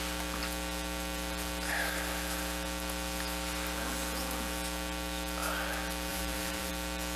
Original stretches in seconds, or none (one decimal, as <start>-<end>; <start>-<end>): 0.0-6.1; 6.7-7.2